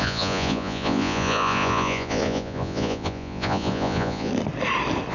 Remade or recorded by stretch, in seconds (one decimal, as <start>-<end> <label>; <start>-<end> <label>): 0.0-4.3 remade; 4.3-5.1 recorded